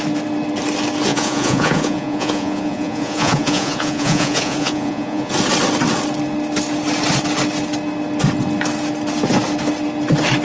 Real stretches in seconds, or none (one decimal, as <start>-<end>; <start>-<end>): 0.0-1.1; 5.3-10.4